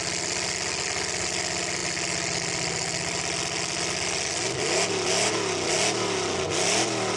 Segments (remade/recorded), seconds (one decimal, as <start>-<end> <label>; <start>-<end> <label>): 0.0-7.2 recorded